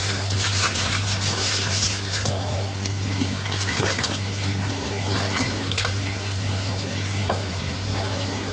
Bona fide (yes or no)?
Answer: no